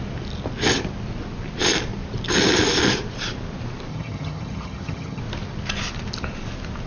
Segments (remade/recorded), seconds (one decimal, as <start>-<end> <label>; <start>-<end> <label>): 0.0-3.9 recorded; 3.9-5.2 remade; 5.2-6.9 recorded